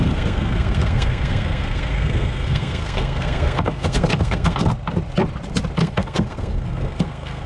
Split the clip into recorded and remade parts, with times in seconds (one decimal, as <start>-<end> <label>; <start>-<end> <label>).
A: 0.0-4.7 remade; 4.7-5.8 recorded; 5.8-7.5 remade